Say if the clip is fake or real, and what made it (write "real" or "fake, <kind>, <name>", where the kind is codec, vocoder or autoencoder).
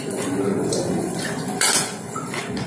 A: fake, vocoder, Vocos